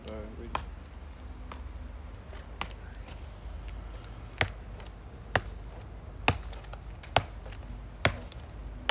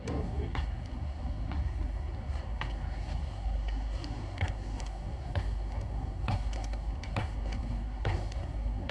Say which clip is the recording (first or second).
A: first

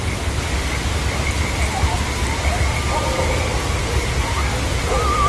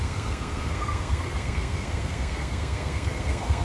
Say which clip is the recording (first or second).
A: first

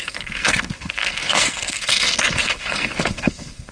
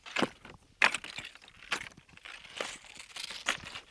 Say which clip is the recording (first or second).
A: second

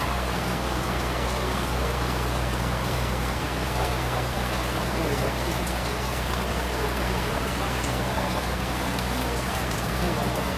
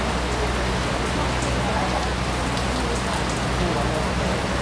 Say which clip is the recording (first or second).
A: second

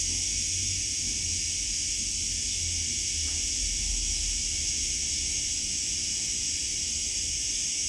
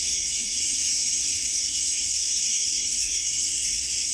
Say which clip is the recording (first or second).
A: first